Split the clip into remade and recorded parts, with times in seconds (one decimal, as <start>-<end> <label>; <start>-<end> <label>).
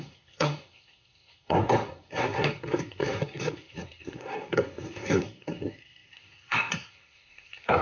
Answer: 0.0-7.8 remade